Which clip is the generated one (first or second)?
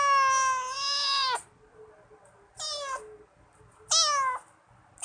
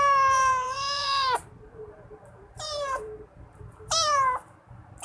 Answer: second